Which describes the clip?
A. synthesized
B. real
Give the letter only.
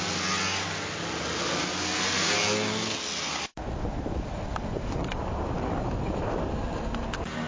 B